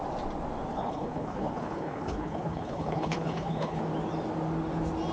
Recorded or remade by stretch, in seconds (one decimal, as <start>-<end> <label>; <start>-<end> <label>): 0.0-0.7 recorded; 0.7-3.8 remade; 3.8-5.1 recorded